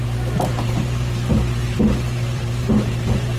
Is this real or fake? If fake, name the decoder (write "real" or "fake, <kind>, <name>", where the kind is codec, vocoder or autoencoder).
fake, vocoder, BigVGAN v2